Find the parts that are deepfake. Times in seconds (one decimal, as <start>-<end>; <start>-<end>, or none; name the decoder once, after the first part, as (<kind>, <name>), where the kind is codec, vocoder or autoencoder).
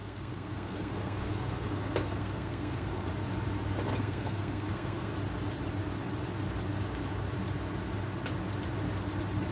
0.0-3.1 (codec, SNAC); 4.0-5.1